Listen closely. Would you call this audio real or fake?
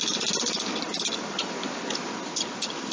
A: real